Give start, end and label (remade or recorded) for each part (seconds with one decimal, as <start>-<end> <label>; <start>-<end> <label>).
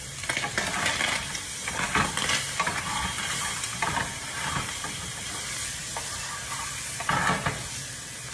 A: 0.0-8.3 recorded